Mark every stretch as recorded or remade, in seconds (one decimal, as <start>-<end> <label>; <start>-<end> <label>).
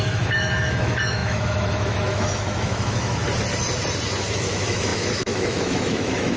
0.0-3.2 remade; 3.2-4.3 recorded; 4.3-6.4 remade